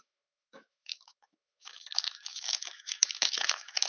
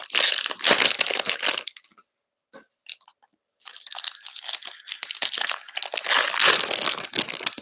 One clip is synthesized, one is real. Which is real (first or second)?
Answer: second